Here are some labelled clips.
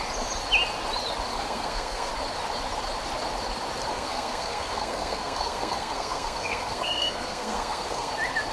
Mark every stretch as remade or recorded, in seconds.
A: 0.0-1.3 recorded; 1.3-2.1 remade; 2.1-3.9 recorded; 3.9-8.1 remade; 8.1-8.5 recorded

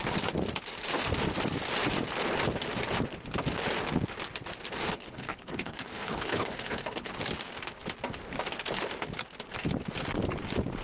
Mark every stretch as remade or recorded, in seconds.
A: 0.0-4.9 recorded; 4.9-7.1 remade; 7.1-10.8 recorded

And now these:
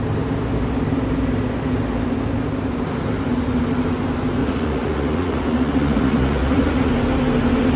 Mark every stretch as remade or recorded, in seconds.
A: 0.0-4.4 recorded; 4.4-6.9 remade; 6.9-7.8 recorded

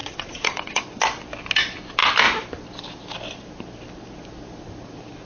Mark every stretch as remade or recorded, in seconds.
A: 0.0-0.8 remade; 0.8-5.3 recorded

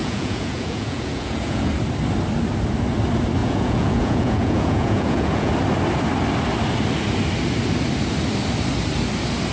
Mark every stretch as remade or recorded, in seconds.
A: 0.0-1.7 remade; 1.7-3.4 recorded; 3.4-5.5 remade; 5.5-9.5 recorded

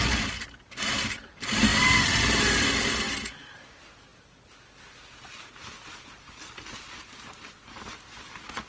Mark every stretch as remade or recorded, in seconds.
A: 0.0-8.7 recorded

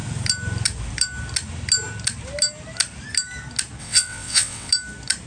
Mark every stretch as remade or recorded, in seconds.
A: 0.0-3.8 recorded; 3.8-4.7 remade; 4.7-5.3 recorded

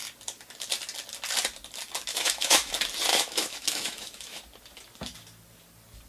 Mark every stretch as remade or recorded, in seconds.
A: 0.0-2.1 recorded; 2.1-2.7 remade; 2.7-3.1 recorded; 3.1-4.4 remade; 4.4-6.1 recorded